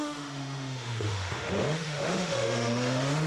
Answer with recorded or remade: remade